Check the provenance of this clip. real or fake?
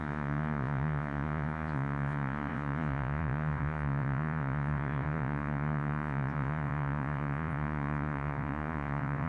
fake